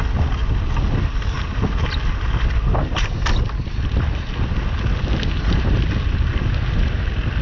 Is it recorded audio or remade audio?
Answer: recorded